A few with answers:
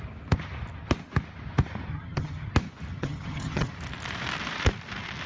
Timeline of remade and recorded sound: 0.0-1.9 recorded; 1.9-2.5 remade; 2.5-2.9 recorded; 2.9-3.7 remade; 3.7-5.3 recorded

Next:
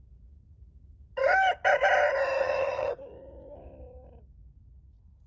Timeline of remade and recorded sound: 0.0-2.4 recorded; 2.4-2.9 remade; 2.9-5.3 recorded